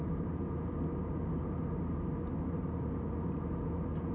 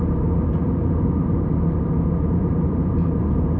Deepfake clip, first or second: second